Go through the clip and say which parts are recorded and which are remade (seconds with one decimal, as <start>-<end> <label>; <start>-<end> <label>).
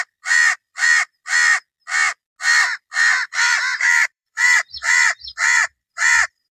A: 0.0-1.5 remade; 1.5-2.7 recorded; 2.7-6.5 remade